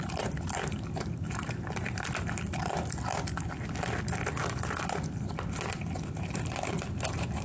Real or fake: real